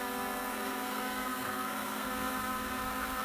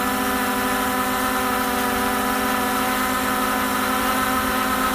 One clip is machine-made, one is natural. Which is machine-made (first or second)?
first